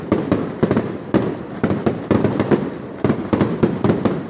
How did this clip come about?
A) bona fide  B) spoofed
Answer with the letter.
B